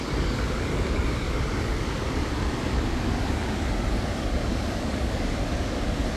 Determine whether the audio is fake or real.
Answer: fake